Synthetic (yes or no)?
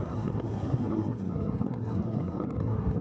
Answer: yes